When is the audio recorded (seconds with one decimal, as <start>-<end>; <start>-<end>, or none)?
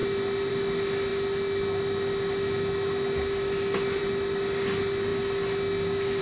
0.0-6.2